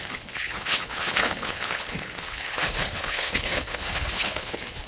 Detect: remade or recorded remade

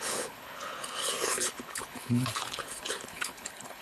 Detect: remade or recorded remade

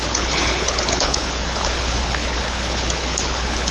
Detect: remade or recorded remade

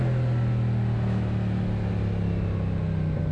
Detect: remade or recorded recorded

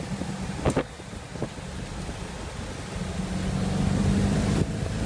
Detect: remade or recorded recorded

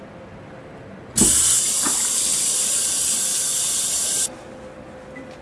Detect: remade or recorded recorded